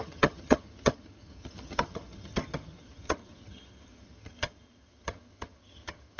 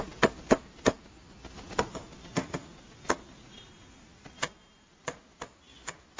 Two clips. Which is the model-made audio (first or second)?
first